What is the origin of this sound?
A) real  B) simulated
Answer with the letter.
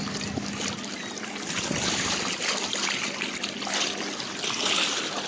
A